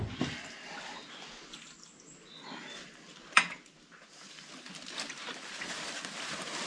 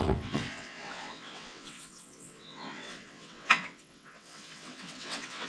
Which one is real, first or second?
first